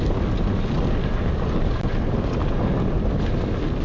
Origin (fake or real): real